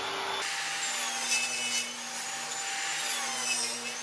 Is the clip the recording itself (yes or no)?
yes